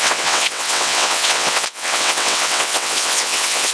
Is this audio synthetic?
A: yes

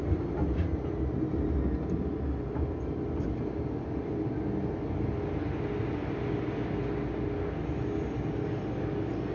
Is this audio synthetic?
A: no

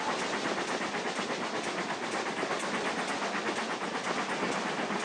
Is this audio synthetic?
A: no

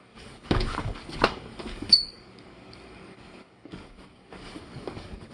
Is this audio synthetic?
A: yes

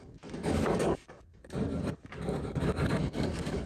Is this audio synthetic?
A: yes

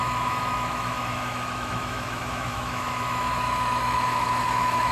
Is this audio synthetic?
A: yes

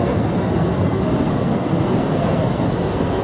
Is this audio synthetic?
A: yes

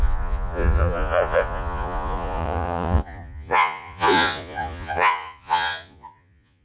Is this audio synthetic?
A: yes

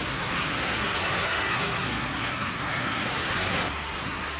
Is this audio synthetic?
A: yes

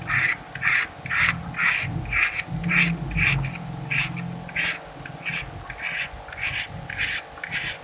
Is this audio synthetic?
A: no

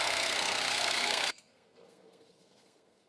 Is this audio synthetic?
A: yes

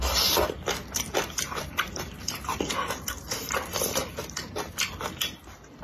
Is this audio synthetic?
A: yes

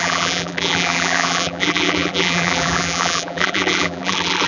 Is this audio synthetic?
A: yes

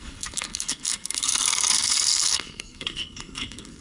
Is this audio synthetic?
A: yes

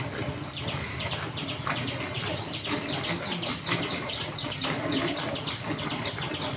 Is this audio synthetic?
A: no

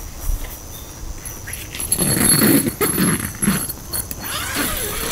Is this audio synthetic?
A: no